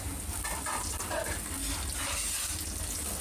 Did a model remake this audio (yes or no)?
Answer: no